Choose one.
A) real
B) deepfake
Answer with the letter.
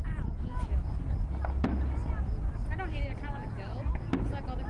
A